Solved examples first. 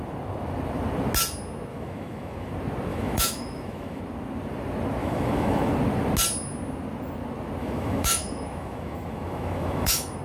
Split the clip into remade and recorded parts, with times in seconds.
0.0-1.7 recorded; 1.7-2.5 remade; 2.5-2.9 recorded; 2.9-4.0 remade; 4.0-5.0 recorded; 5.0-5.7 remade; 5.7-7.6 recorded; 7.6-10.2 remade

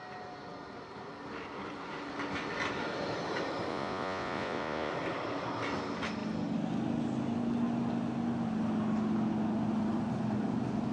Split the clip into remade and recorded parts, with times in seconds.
0.0-3.7 recorded; 3.7-4.9 remade; 4.9-10.9 recorded

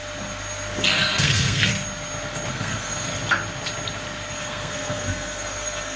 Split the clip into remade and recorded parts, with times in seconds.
0.0-0.9 recorded; 0.9-1.7 remade; 1.7-2.5 recorded; 2.5-3.1 remade; 3.1-4.3 recorded; 4.3-6.0 remade

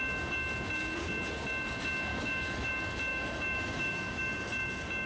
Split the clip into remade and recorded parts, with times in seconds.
0.0-2.1 recorded; 2.1-2.7 remade; 2.7-3.1 recorded; 3.1-4.2 remade; 4.2-5.1 recorded